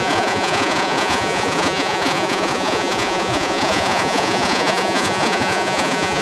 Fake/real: fake